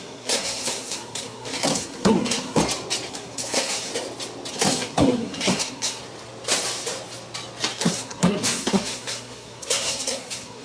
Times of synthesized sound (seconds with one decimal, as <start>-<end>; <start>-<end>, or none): 0.0-2.6; 3.1-3.9; 4.5-6.0; 7.7-10.6